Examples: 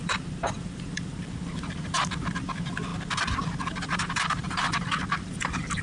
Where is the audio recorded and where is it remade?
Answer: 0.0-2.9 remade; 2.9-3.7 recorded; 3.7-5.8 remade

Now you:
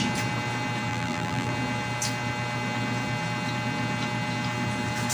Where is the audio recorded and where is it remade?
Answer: 0.0-0.9 recorded; 0.9-1.5 remade; 1.5-5.1 recorded

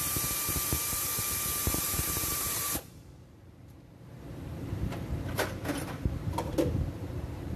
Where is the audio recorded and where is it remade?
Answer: 0.0-1.1 remade; 1.1-1.8 recorded; 1.8-7.6 remade

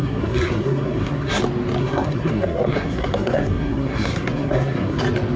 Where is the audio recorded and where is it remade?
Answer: 0.0-1.4 remade; 1.4-1.8 recorded; 1.8-5.0 remade; 5.0-5.4 recorded

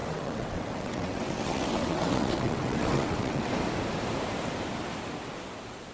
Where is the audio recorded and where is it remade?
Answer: 0.0-3.5 remade; 3.5-5.9 recorded

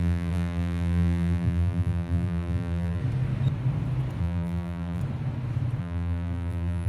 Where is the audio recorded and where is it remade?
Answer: 0.0-3.0 remade; 3.0-4.2 recorded; 4.2-5.0 remade; 5.0-5.8 recorded; 5.8-6.9 remade

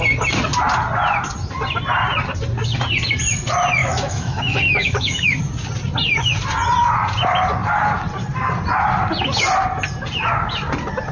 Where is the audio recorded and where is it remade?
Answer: 0.0-3.8 recorded; 3.8-5.4 remade; 5.4-11.1 recorded

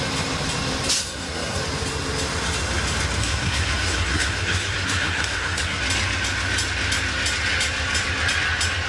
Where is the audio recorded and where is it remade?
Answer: 0.0-1.0 recorded; 1.0-1.6 remade; 1.6-3.2 recorded; 3.2-5.8 remade; 5.8-8.9 recorded